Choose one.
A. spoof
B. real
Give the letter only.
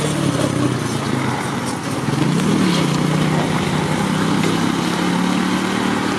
B